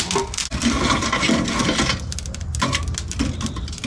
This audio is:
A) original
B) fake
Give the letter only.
A